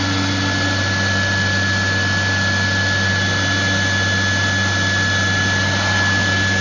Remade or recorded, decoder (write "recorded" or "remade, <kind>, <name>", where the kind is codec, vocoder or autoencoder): recorded